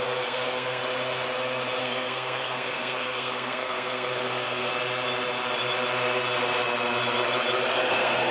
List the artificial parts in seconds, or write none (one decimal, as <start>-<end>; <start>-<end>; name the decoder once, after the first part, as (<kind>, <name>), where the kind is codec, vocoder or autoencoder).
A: 0.0-0.8 (codec, SNAC); 1.8-4.7; 7.9-8.3